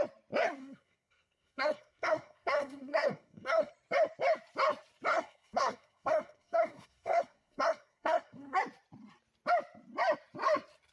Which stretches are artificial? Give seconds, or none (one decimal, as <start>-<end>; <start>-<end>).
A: 0.6-3.7; 5.1-8.6